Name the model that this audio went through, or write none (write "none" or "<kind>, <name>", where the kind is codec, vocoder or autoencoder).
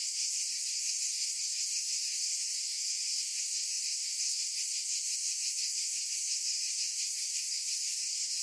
codec, SNAC